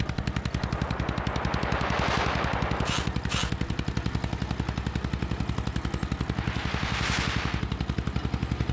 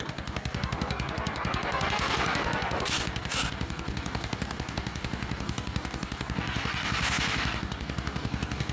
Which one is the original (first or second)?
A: first